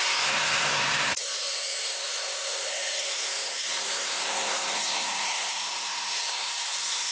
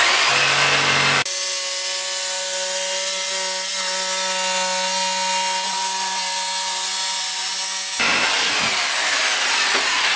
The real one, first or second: second